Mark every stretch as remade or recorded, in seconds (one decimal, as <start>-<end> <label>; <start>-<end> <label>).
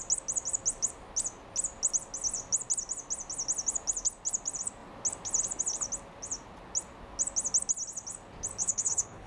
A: 0.0-8.6 recorded; 8.6-9.3 remade